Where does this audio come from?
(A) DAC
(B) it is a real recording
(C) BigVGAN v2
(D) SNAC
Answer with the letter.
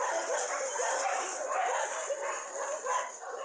B